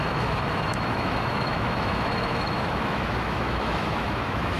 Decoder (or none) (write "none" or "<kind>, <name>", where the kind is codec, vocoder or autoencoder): autoencoder, DAC-VAE